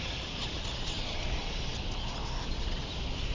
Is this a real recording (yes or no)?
yes